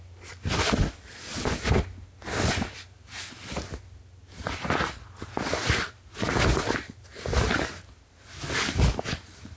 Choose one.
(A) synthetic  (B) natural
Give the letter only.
B